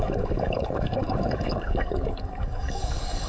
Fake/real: fake